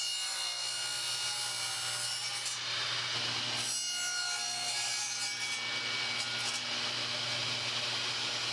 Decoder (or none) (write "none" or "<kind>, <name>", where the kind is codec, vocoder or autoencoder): none